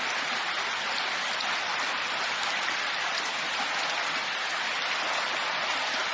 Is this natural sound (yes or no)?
yes